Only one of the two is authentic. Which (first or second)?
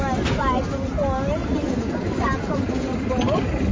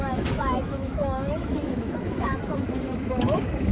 first